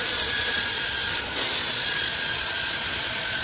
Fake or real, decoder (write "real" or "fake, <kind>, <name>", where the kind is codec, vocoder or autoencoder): fake, vocoder, Vocos